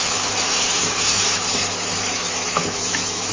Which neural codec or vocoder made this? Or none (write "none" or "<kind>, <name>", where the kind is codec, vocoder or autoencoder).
autoencoder, DAC-VAE